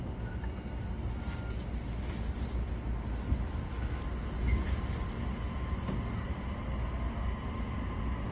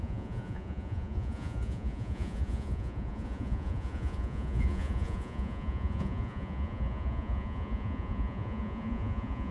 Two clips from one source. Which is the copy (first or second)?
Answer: second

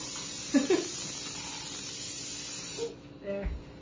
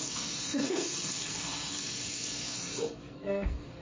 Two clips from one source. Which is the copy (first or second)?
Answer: second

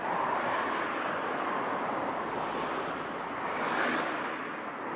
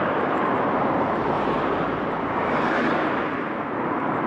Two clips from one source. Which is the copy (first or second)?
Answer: second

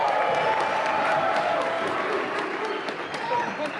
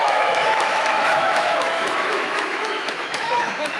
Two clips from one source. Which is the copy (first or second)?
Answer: second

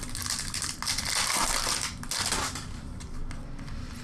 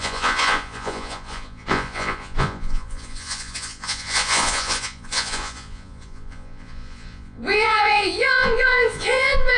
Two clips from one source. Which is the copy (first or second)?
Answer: second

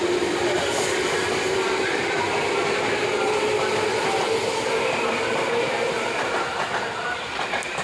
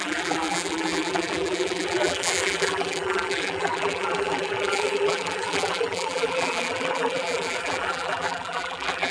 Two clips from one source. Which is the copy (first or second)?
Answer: second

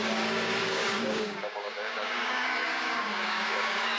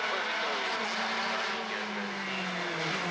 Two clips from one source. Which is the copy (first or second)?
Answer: first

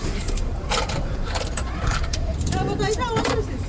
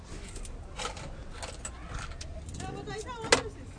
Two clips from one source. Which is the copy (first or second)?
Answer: first